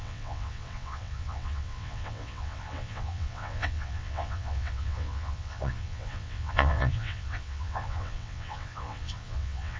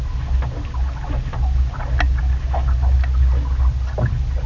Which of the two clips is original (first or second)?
second